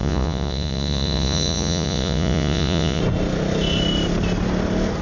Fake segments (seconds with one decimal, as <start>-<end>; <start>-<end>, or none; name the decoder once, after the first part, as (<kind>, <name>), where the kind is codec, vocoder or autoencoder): 0.0-3.0 (vocoder, Vocos)

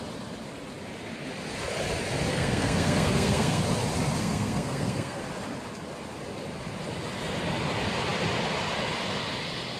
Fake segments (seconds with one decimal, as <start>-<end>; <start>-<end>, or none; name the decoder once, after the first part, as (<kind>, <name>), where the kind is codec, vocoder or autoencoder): 2.3-3.6 (codec, SNAC); 4.2-5.2

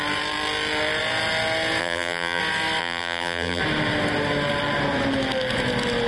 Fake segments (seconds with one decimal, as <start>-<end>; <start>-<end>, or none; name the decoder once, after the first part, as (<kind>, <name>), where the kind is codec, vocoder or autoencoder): 1.8-2.4 (vocoder, BigVGAN v2); 2.8-3.6